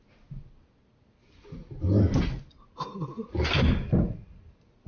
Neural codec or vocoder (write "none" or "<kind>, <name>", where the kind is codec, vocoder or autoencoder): none